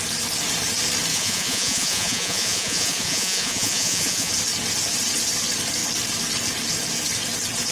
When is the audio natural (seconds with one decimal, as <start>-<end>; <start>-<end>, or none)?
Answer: 0.0-1.1; 4.3-7.7